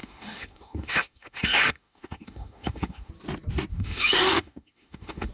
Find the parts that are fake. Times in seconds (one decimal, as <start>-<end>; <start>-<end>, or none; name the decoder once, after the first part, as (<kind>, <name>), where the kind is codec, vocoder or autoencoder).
0.0-3.1 (autoencoder, DAC-VAE); 3.7-5.3